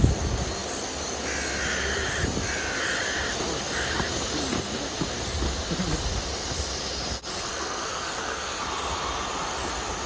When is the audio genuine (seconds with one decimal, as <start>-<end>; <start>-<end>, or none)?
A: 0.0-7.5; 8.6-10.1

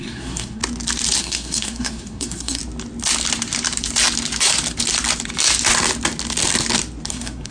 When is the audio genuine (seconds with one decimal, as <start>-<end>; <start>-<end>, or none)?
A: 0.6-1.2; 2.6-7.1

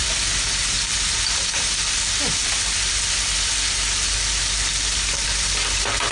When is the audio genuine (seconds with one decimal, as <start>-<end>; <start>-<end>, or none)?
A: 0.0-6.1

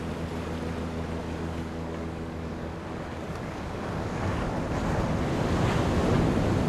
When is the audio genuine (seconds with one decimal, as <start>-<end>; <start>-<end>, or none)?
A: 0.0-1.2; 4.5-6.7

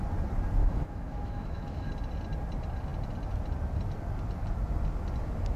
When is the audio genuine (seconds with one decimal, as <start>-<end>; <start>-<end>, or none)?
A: 0.0-0.6; 1.9-5.6

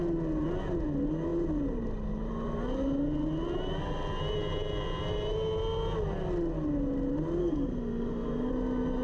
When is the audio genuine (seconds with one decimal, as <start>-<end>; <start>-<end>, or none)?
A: 0.0-7.4; 8.5-9.0

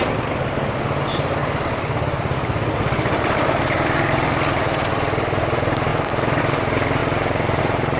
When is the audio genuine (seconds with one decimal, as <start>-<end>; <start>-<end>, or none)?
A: 0.0-5.9; 6.4-8.0

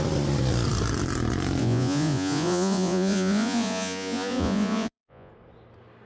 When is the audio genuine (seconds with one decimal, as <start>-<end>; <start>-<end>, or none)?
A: 0.0-1.6; 5.3-6.1